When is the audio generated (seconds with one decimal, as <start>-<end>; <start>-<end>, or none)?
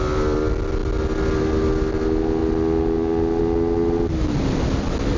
none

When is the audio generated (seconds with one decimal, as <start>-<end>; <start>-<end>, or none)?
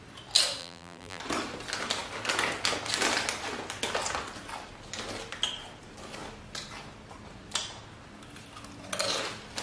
0.6-1.2